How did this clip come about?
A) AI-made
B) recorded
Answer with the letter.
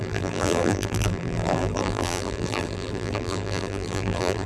A